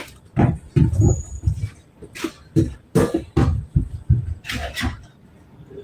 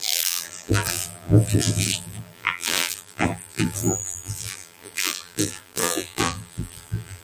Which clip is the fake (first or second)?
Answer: second